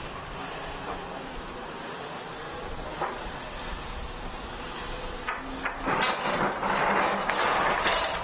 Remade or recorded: recorded